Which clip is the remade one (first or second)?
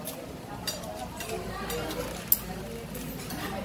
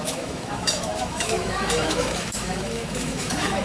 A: second